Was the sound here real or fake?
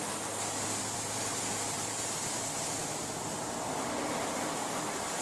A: real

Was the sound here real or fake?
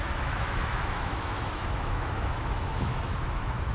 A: fake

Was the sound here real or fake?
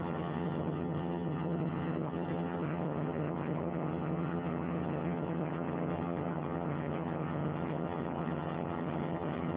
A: fake